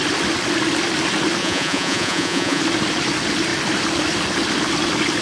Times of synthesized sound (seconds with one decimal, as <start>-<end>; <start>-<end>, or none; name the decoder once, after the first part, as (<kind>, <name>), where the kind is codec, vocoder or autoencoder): 1.4-2.6 (vocoder, Vocos)